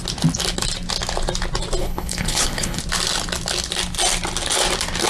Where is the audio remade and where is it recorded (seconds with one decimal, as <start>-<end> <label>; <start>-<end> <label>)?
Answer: 0.0-1.8 recorded; 1.8-2.8 remade; 2.8-5.1 recorded

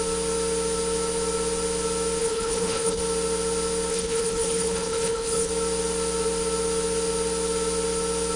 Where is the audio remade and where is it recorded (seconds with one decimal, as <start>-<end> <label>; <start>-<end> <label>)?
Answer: 0.0-2.2 recorded; 2.2-3.0 remade; 3.0-3.9 recorded; 3.9-5.5 remade; 5.5-8.4 recorded

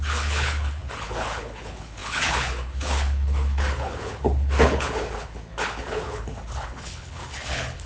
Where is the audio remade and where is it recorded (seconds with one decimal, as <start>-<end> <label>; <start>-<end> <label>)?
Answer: 0.0-7.9 remade